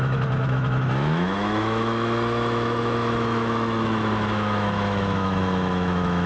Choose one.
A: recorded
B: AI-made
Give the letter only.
B